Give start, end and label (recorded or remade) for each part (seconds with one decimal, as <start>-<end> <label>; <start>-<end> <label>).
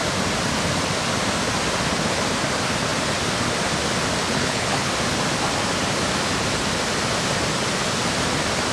0.0-4.2 recorded; 4.2-4.9 remade; 4.9-8.7 recorded